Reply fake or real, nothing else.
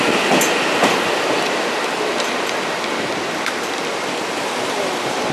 fake